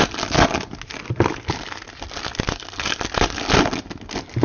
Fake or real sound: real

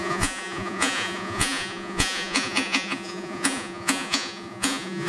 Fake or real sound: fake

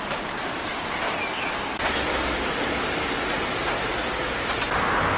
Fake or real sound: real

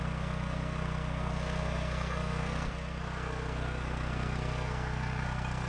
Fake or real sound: fake